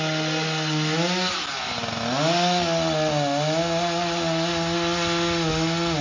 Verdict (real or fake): real